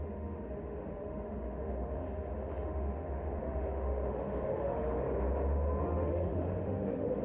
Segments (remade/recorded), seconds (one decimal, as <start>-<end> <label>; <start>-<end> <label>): 0.0-5.0 remade; 5.0-5.8 recorded; 5.8-7.2 remade